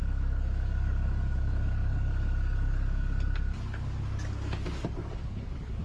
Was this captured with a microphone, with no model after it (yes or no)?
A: no